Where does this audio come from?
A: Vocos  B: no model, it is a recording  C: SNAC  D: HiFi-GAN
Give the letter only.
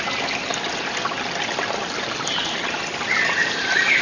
B